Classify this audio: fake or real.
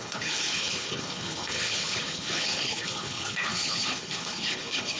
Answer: fake